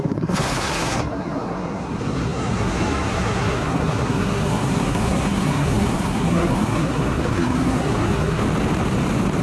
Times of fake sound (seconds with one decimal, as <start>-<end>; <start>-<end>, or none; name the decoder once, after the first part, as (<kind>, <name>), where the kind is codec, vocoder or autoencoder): 0.0-8.4 (codec, SNAC)